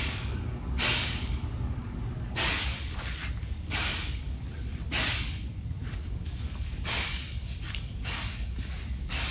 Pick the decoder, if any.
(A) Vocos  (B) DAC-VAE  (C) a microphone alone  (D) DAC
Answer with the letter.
D